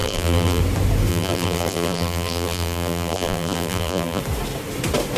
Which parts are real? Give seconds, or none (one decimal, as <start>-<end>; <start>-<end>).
0.6-1.1; 4.2-5.2